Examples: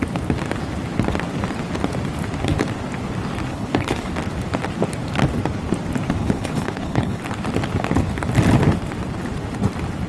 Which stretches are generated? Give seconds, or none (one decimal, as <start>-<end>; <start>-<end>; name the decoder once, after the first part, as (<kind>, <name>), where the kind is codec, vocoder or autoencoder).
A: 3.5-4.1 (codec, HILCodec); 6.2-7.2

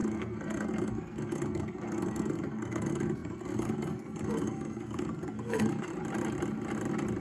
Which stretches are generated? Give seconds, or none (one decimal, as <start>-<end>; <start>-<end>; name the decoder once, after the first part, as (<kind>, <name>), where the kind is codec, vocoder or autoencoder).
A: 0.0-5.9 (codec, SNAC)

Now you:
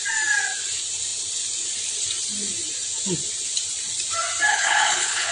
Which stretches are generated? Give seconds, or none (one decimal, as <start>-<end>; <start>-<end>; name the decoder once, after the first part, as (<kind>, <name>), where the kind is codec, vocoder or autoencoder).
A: 4.5-5.3 (codec, HILCodec)